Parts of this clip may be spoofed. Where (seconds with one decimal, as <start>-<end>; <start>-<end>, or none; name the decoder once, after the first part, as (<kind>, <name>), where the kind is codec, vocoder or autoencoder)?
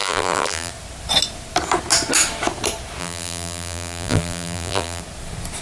0.0-0.7 (vocoder, BigVGAN v2); 3.0-5.0